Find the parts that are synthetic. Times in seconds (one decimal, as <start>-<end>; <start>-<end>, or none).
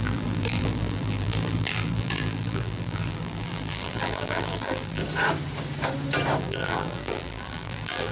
0.0-5.0; 6.4-8.1